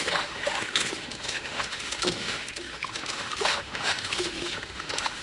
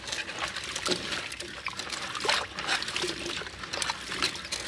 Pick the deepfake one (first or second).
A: first